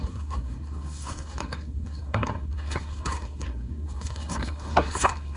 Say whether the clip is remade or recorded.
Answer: remade